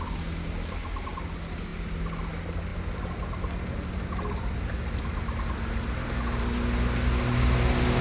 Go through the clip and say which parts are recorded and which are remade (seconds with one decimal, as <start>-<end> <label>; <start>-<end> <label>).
0.0-8.0 recorded